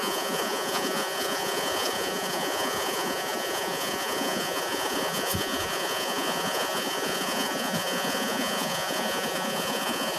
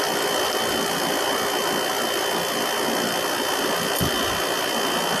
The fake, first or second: first